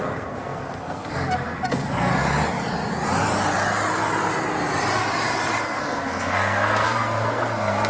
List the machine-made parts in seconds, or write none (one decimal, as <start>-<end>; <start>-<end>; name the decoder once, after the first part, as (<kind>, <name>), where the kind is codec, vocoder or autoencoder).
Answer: 0.0-2.1 (codec, SNAC); 5.6-7.9

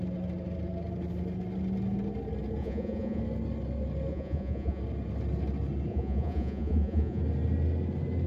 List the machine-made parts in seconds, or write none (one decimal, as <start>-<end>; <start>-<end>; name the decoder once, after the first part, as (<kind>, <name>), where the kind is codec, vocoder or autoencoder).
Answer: 2.6-3.2 (vocoder, Vocos); 4.1-4.8; 5.9-7.2